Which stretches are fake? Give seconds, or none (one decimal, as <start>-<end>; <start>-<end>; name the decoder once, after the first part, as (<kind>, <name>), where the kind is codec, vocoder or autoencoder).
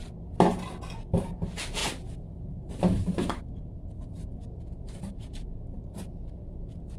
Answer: 1.8-6.0 (vocoder, BigVGAN v2)